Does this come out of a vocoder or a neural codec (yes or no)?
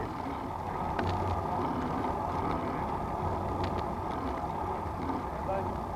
no